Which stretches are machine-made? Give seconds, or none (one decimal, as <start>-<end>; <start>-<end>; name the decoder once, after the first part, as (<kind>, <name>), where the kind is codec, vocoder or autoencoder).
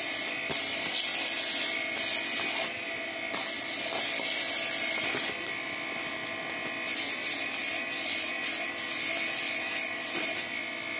0.0-1.1 (vocoder, BigVGAN v2); 3.8-6.2; 7.1-11.0